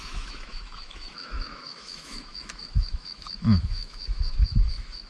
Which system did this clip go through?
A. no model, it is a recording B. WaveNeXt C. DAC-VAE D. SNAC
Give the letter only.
C